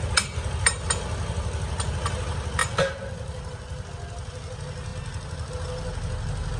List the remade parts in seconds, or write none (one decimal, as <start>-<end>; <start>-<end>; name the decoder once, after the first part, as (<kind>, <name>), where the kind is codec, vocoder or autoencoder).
2.6-3.9 (vocoder, BigVGAN v2); 4.9-5.5